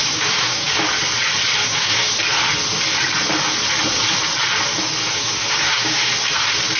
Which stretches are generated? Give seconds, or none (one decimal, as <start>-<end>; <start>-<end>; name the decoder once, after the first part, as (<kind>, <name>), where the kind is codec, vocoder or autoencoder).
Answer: 0.0-0.7 (codec, DAC); 1.6-2.2; 5.0-6.1